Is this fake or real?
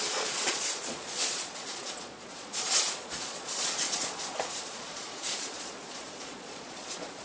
fake